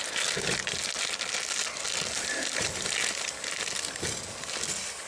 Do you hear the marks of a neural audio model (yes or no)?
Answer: no